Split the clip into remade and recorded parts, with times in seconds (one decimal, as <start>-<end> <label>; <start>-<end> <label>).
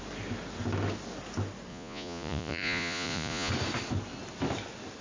0.0-1.7 recorded; 1.7-3.5 remade; 3.5-5.0 recorded